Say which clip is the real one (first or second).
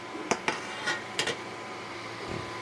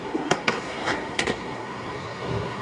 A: first